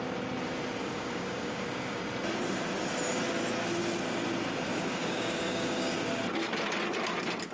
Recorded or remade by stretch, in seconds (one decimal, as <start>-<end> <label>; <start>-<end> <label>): 0.0-0.8 recorded; 0.8-2.0 remade; 2.0-4.7 recorded; 4.7-6.2 remade; 6.2-7.5 recorded